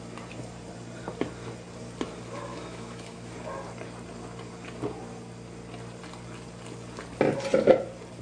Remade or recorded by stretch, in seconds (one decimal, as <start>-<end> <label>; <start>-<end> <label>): 0.0-2.5 recorded; 2.5-3.3 remade; 3.3-8.2 recorded